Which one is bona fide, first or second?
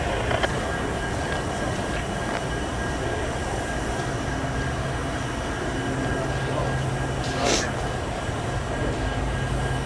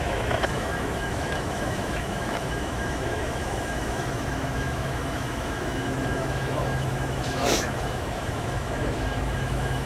first